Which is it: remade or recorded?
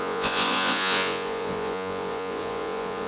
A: remade